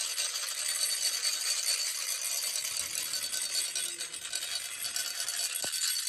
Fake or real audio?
real